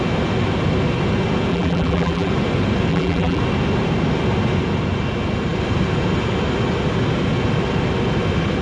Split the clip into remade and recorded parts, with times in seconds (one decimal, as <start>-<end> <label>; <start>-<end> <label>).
0.0-1.5 recorded; 1.5-2.3 remade; 2.3-2.9 recorded; 2.9-3.4 remade; 3.4-8.6 recorded